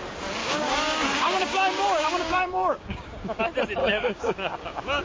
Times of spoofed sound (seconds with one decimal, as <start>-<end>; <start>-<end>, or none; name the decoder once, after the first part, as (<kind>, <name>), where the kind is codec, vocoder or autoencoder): 0.4-3.4 (codec, DAC); 3.8-5.0